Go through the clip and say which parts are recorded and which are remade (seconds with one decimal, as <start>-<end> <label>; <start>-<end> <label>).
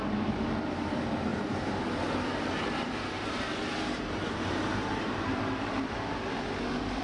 0.0-1.3 recorded; 1.3-1.8 remade; 1.8-2.6 recorded; 2.6-6.0 remade; 6.0-7.0 recorded